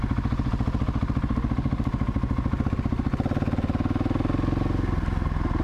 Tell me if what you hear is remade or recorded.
recorded